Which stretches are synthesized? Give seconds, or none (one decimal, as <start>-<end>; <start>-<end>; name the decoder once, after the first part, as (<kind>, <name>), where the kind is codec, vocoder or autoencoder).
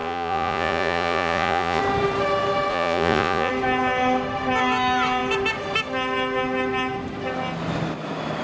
0.0-1.8 (vocoder, Vocos); 2.7-3.5